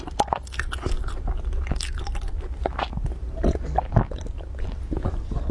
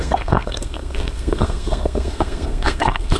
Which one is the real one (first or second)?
first